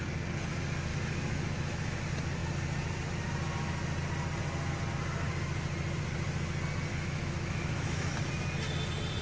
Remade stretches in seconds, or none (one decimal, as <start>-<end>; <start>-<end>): 0.9-2.0; 6.9-8.3